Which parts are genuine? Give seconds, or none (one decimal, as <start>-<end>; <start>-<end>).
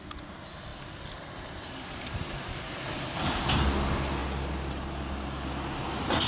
0.0-6.3